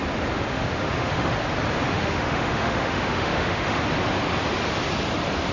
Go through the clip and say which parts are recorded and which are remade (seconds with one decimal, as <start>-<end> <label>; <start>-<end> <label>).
0.0-0.5 recorded; 0.5-1.3 remade; 1.3-1.9 recorded; 1.9-3.8 remade; 3.8-5.5 recorded

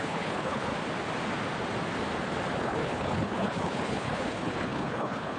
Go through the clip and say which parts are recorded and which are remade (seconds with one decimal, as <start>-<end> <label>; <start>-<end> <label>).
0.0-0.7 remade; 0.7-2.6 recorded; 2.6-5.4 remade

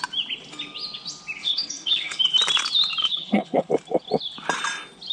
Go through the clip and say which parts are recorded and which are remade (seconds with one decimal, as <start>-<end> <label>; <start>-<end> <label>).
0.0-1.4 recorded; 1.4-2.2 remade; 2.2-3.0 recorded; 3.0-3.7 remade; 3.7-5.1 recorded

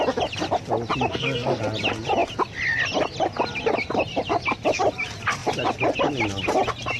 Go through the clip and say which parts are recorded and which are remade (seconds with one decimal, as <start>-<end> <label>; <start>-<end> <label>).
0.0-1.1 recorded; 1.1-1.6 remade; 1.6-7.0 recorded

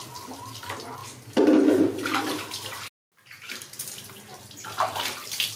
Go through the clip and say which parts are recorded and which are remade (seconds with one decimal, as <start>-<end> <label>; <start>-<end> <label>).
0.0-5.6 recorded

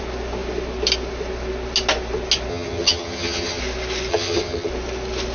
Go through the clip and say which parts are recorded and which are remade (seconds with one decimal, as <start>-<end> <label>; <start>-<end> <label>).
0.0-2.5 recorded; 2.5-3.6 remade; 3.6-4.1 recorded; 4.1-4.7 remade; 4.7-5.3 recorded